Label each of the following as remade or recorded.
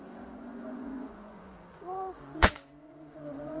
remade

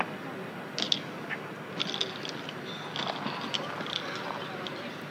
recorded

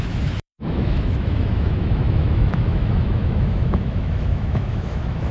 remade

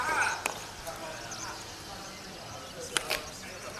recorded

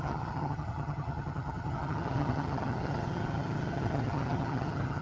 remade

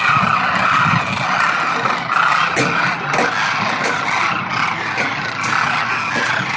recorded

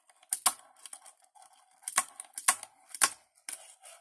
recorded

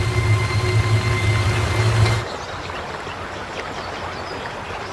recorded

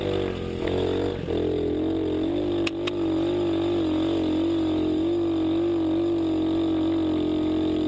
recorded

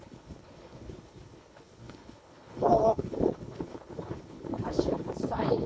remade